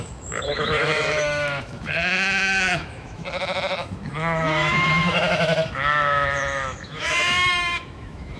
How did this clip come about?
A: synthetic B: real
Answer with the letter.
A